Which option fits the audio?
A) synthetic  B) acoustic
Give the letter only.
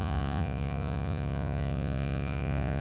A